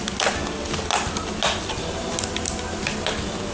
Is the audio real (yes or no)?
yes